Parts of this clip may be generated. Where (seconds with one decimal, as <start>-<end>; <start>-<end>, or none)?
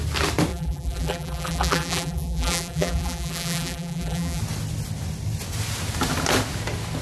0.5-4.4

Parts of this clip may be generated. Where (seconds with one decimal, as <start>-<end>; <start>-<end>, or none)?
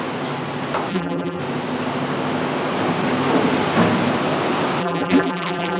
0.9-1.4; 4.8-5.8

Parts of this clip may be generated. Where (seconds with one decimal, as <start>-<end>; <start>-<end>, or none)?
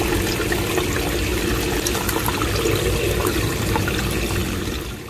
3.2-4.0; 4.4-5.1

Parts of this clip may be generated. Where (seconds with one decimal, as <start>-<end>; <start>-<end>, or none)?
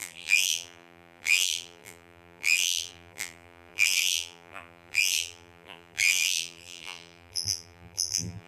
0.0-8.5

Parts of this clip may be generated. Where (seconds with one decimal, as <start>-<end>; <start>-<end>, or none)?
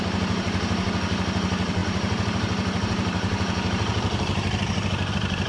0.0-5.5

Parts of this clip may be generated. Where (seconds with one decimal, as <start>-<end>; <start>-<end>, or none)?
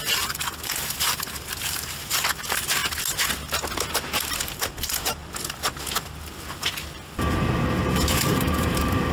0.0-2.8; 4.0-5.2; 7.8-9.1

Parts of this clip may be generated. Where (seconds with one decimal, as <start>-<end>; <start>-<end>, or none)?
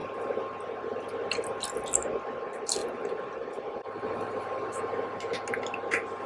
2.8-4.8